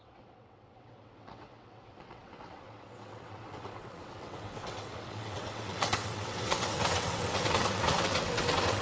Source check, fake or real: fake